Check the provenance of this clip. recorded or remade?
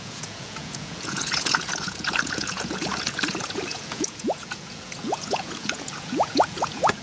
remade